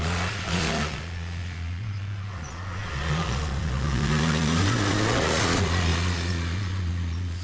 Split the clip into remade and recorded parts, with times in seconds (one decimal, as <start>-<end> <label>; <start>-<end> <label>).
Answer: 0.0-7.4 remade